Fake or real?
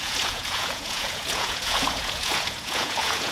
fake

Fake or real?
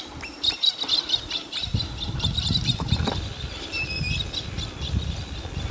real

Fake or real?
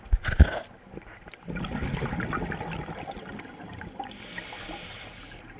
real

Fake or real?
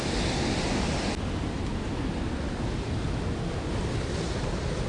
real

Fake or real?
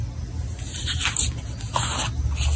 real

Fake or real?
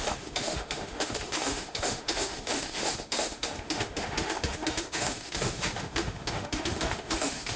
fake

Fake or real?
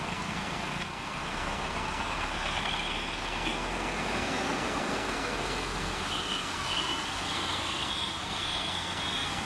fake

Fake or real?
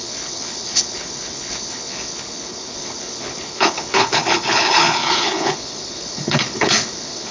fake